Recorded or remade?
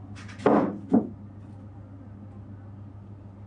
recorded